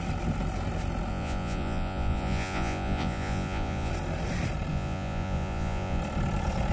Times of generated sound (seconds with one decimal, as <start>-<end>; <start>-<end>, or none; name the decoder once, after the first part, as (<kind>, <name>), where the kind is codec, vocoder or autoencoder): 1.1-3.9 (vocoder, Vocos); 4.7-6.0